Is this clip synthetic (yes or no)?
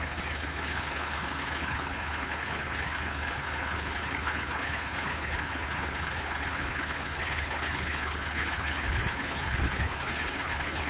yes